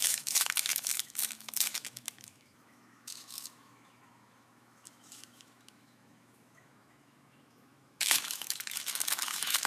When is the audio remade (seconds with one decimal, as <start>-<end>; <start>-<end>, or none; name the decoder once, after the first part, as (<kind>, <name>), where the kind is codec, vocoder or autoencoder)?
0.0-9.7 (autoencoder, DAC-VAE)